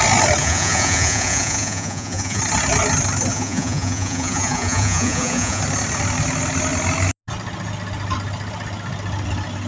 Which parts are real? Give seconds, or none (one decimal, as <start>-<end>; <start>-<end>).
0.0-0.4; 2.4-3.3; 5.6-9.7